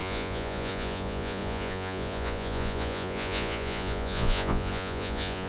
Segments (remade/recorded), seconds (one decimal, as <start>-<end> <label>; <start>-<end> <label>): 0.0-5.5 remade